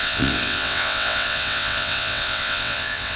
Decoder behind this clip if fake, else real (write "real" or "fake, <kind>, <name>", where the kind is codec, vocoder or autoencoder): fake, vocoder, WaveNeXt